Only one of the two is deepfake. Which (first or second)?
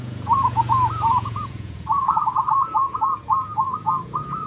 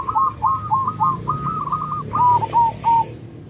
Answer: first